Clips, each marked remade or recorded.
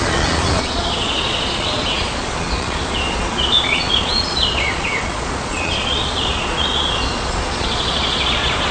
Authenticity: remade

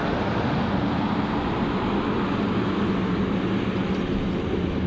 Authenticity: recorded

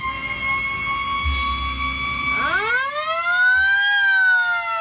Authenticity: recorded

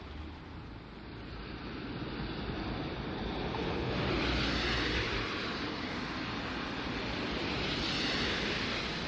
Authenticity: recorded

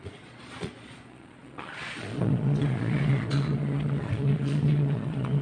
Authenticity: remade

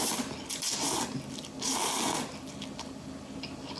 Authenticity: recorded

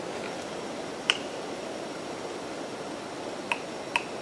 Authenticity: recorded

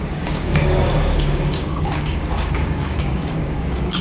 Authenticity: remade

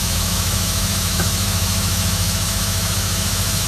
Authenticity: remade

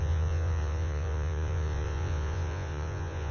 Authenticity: remade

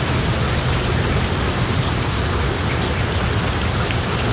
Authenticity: recorded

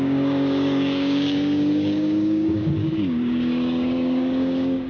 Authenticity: remade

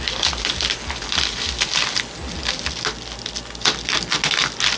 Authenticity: recorded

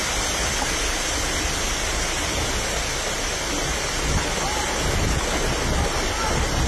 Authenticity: recorded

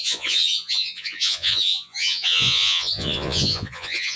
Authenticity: remade